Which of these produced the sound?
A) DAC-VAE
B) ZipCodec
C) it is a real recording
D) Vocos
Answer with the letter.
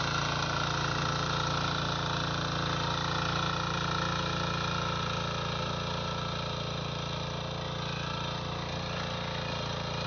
C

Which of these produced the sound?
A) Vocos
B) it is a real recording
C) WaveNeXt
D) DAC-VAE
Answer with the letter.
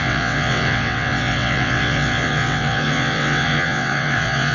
C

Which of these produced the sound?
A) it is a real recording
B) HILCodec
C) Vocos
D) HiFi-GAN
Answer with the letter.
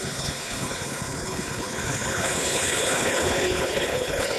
B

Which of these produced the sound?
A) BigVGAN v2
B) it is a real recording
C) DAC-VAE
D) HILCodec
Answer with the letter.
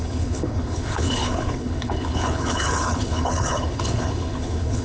D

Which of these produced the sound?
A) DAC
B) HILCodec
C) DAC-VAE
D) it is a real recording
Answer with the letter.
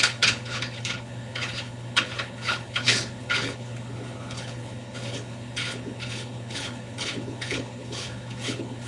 B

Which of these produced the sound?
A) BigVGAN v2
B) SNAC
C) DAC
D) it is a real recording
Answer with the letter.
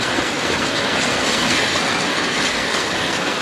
B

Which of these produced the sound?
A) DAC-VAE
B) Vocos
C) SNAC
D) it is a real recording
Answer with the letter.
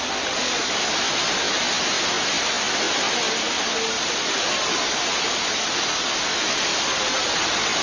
D